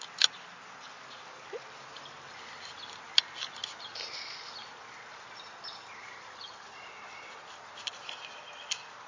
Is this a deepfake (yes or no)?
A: no